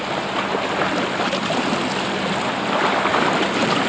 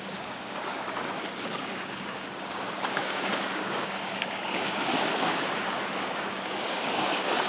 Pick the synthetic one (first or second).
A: second